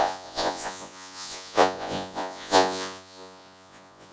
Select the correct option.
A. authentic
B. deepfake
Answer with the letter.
B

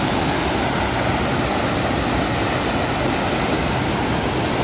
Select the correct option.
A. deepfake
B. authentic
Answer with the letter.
B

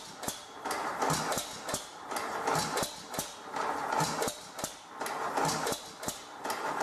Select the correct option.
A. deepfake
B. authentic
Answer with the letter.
B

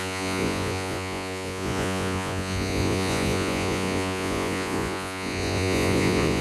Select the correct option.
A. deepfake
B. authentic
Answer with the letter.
A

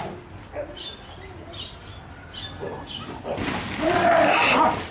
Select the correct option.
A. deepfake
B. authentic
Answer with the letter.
B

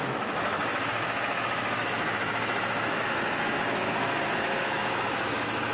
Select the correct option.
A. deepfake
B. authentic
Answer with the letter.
A